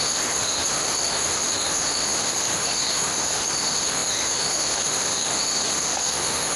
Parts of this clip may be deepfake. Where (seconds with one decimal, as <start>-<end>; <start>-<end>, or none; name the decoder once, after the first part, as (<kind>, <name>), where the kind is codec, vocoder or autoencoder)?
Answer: 0.0-6.6 (autoencoder, DAC-VAE)